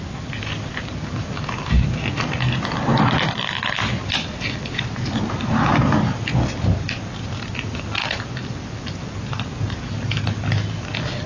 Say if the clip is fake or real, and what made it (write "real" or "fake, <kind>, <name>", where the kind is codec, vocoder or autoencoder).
real